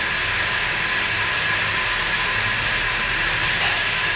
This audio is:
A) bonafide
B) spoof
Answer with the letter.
A